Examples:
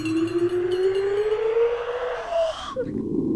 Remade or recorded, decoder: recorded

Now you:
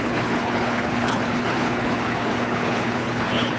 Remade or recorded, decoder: remade, codec, HILCodec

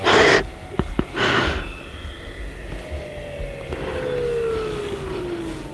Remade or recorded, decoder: recorded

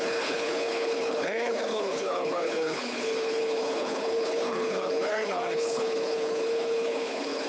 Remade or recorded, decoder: remade, codec, HILCodec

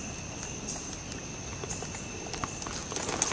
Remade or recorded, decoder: recorded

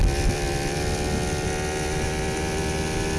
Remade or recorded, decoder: recorded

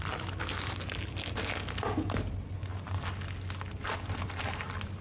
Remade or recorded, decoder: recorded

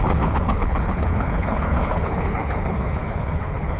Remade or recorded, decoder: remade, codec, HILCodec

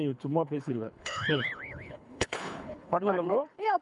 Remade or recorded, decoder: remade, codec, HILCodec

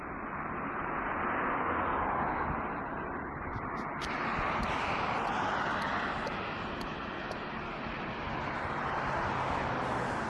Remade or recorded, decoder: recorded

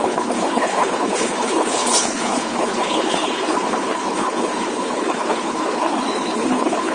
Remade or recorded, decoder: remade, codec, HILCodec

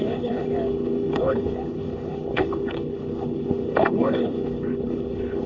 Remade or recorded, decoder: remade, codec, HILCodec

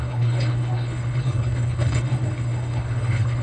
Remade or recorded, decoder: remade, codec, HILCodec